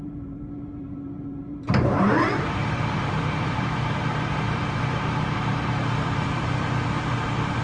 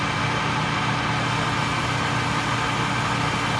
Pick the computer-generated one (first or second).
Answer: first